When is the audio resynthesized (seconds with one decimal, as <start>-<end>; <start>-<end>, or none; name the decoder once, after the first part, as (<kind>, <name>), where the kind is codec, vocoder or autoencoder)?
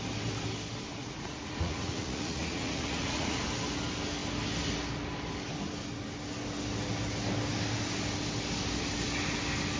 1.0-3.4 (vocoder, Vocos)